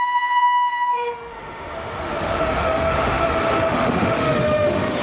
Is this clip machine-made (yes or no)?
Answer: yes